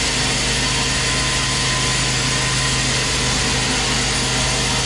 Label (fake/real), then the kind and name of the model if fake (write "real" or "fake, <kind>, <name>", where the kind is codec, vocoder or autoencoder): real